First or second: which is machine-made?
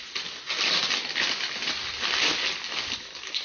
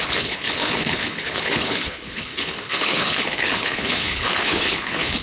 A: second